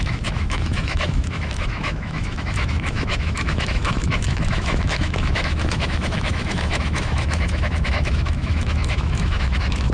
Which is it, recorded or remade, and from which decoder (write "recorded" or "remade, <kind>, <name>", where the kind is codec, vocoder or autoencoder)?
remade, autoencoder, DAC-VAE